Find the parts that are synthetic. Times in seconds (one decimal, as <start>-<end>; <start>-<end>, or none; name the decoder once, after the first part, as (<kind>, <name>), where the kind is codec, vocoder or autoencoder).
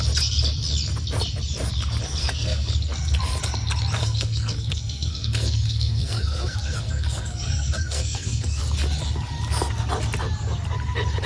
2.2-2.7 (codec, SNAC); 4.0-8.6